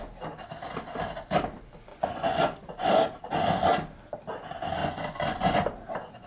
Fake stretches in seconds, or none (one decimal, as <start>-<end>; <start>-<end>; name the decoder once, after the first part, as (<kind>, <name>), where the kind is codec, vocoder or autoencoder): 1.9-2.9 (vocoder, Vocos); 4.8-5.6